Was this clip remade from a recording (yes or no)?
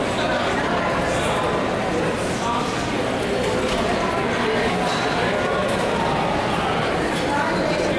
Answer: no